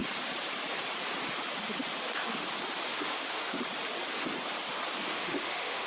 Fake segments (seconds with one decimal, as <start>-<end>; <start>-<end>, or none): 2.9-3.6; 5.1-5.9